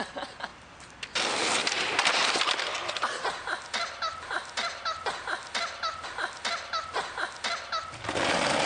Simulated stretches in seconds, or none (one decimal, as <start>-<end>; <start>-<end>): 0.5-2.6; 5.4-7.0